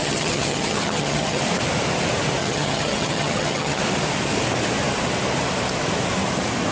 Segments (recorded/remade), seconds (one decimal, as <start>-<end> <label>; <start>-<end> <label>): 0.0-1.4 remade; 1.4-2.4 recorded; 2.4-3.8 remade; 3.8-6.7 recorded